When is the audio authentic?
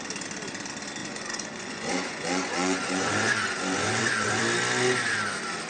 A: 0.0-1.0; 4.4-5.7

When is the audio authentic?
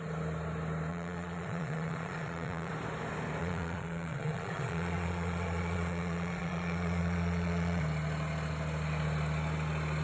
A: 0.0-0.9; 2.7-3.4; 7.8-10.0